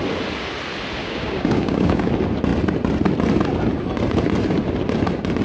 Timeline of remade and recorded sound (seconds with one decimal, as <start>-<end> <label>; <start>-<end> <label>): 0.0-1.0 recorded; 1.0-2.1 remade; 2.1-5.4 recorded